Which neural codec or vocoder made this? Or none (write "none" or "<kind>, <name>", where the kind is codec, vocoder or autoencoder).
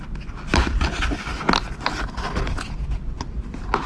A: none